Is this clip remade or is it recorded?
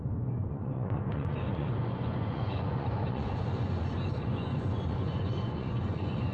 remade